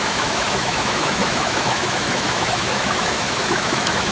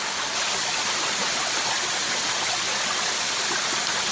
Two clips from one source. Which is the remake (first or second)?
first